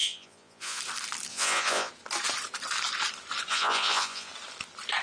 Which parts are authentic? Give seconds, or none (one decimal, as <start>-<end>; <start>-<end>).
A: 0.8-1.3; 1.9-3.5; 4.3-5.0